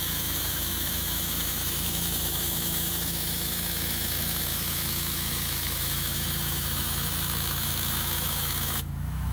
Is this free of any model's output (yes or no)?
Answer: no